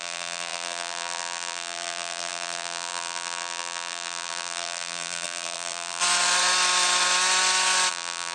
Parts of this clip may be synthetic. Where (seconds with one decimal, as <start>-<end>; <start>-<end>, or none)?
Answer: 0.0-6.0; 7.9-8.3